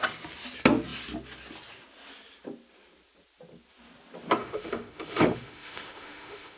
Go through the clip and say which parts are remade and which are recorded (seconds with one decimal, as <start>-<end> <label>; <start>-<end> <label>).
0.0-4.4 recorded; 4.4-6.6 remade